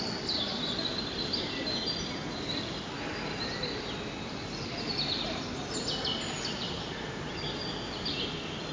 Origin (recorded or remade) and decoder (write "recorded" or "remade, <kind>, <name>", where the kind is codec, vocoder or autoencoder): recorded